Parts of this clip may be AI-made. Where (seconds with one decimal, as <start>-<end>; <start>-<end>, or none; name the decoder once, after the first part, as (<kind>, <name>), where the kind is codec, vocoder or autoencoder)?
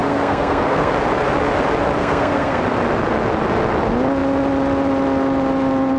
0.0-0.9 (codec, SNAC); 2.0-2.6